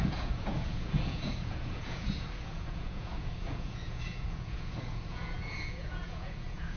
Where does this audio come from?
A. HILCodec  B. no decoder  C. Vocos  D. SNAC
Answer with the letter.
C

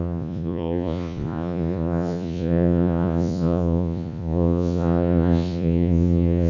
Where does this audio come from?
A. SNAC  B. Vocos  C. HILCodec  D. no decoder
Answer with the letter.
B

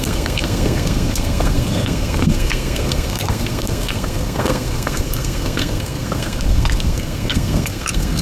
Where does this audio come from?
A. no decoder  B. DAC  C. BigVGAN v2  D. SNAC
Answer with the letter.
D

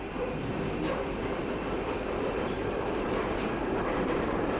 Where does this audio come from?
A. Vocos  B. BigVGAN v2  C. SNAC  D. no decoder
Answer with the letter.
B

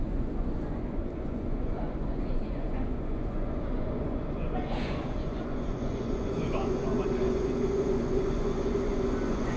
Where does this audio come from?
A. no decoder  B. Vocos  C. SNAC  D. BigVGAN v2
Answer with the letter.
B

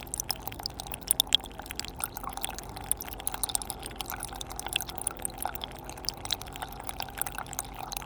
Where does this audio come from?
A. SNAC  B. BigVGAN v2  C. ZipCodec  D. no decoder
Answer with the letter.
D